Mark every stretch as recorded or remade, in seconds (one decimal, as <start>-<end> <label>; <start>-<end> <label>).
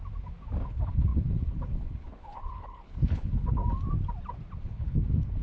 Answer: 0.0-0.6 recorded; 0.6-3.6 remade; 3.6-4.6 recorded; 4.6-5.4 remade